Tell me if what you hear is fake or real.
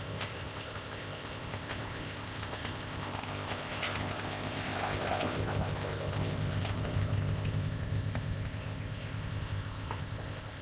fake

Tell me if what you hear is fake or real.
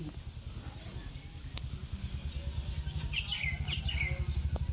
real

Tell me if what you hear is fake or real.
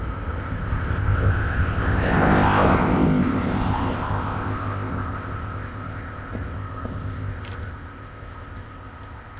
fake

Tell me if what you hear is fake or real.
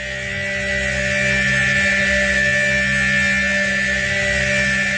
real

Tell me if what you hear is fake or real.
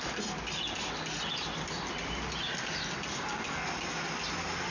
real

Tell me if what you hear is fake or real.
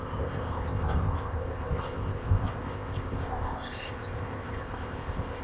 fake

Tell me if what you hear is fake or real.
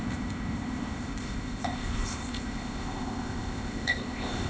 fake